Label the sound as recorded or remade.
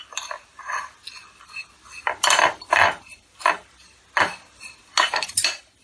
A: recorded